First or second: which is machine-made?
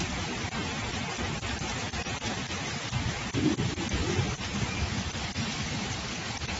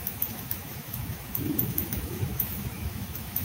second